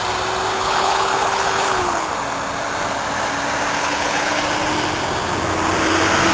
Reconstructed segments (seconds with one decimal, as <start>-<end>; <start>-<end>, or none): 0.5-2.1; 3.8-4.4